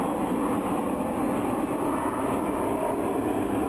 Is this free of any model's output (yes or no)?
yes